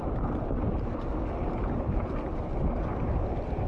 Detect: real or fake real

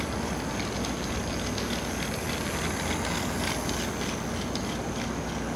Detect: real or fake real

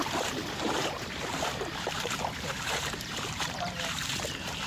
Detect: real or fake fake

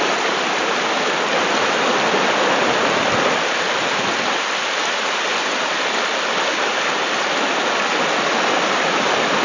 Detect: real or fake real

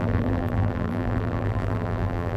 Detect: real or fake fake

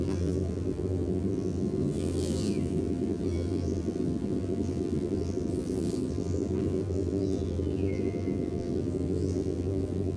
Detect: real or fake fake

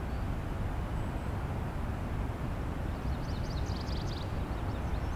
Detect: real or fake real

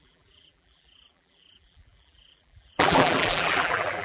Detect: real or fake fake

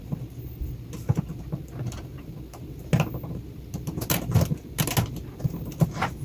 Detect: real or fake real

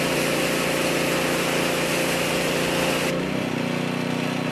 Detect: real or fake real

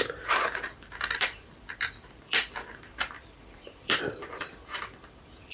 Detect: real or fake fake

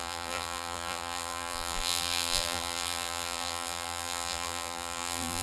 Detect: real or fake fake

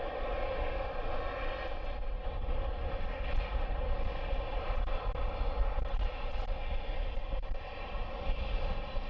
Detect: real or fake real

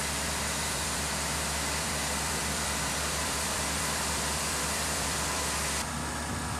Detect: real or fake fake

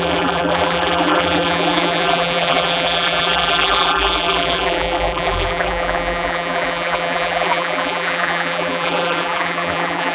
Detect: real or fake fake